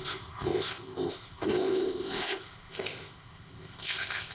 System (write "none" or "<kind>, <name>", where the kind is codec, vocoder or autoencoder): codec, ZipCodec